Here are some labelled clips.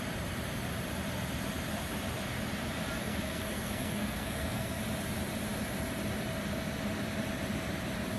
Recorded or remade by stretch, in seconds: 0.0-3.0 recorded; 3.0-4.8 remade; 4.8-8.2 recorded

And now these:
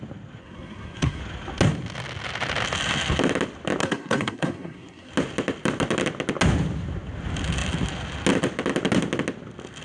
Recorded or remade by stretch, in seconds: 0.0-0.4 recorded; 0.4-1.2 remade; 1.2-3.8 recorded; 3.8-5.1 remade; 5.1-9.8 recorded